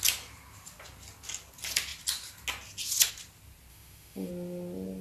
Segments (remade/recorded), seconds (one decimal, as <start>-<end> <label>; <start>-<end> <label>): 0.0-3.7 recorded; 3.7-4.3 remade; 4.3-5.0 recorded